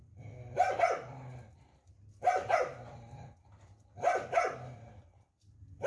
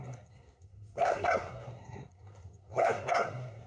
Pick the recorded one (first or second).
first